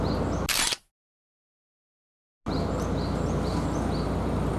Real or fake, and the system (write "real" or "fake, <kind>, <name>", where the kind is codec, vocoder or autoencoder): real